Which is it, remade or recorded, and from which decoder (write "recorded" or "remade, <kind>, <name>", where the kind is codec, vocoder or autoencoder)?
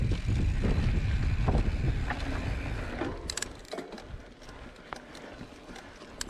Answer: recorded